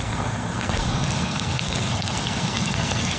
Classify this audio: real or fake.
fake